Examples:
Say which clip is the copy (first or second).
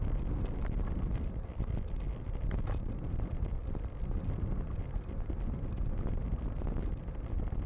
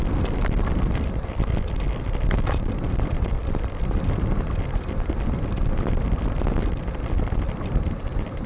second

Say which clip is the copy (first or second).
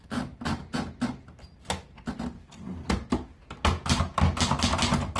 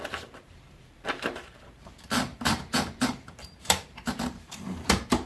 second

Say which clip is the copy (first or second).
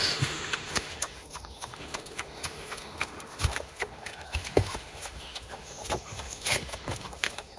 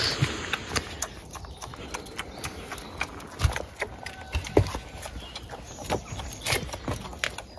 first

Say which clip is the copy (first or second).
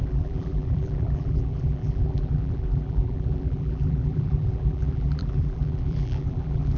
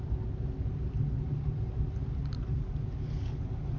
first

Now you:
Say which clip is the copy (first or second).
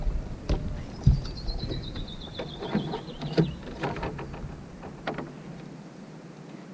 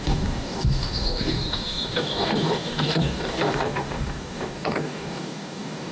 second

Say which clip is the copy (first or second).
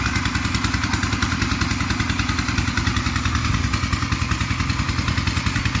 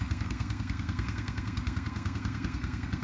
second